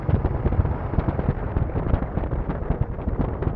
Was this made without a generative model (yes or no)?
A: yes